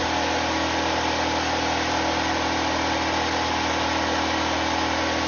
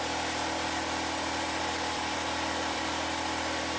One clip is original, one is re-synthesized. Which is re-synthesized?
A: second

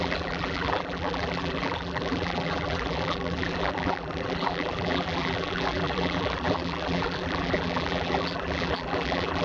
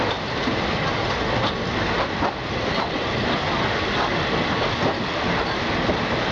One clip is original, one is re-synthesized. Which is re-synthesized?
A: first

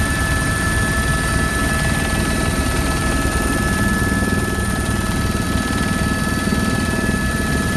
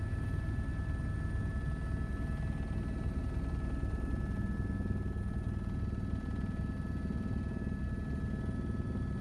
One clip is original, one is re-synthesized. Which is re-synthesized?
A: first